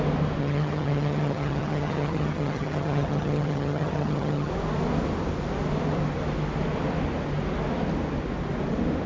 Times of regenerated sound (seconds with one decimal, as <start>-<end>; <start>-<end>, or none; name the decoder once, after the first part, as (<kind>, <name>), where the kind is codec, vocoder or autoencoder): 0.4-4.5 (vocoder, HiFi-GAN)